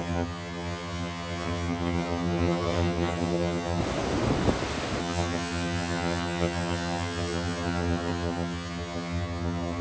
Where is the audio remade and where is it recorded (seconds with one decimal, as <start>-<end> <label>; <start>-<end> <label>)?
0.0-3.8 remade; 3.8-5.0 recorded; 5.0-9.8 remade